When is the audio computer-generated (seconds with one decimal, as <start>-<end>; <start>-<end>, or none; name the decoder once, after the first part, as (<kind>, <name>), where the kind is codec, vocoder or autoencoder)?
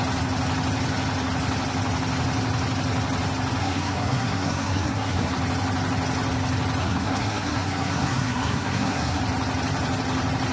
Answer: 3.6-5.3 (codec, SNAC); 6.8-9.2